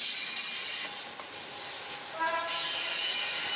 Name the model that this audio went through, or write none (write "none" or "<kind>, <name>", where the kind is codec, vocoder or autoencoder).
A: none